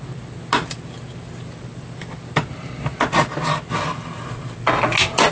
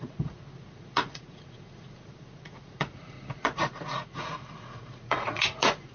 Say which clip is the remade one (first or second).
second